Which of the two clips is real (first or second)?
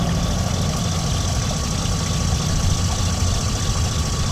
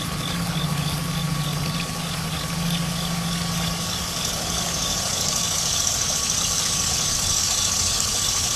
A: first